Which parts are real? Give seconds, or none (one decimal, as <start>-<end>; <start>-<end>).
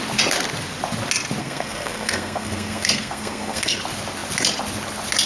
0.0-1.4; 3.8-5.3